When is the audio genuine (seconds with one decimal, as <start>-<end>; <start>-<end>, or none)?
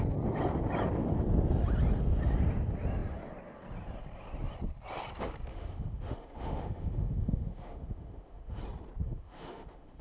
0.0-5.5; 8.6-9.0